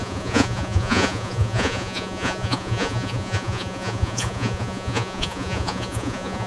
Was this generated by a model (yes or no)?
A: yes